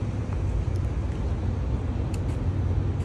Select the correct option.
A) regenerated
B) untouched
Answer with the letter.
B